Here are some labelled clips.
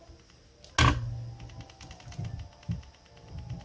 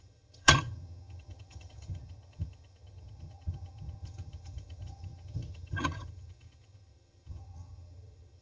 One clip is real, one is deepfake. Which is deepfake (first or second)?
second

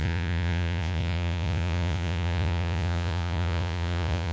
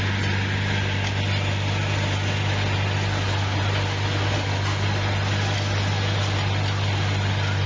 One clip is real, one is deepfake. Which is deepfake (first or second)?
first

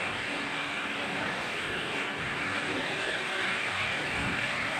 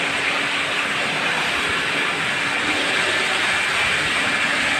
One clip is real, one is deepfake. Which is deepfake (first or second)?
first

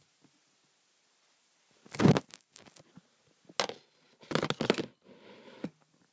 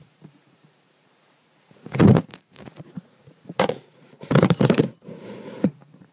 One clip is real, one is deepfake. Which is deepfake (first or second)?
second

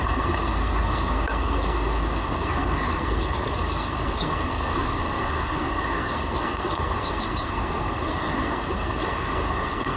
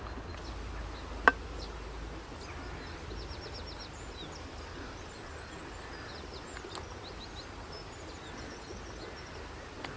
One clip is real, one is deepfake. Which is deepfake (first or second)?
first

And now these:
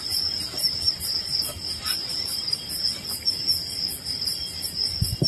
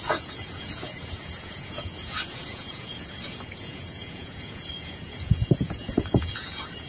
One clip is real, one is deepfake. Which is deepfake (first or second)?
second